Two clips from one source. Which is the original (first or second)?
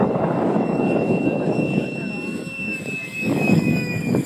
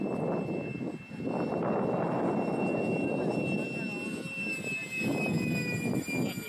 second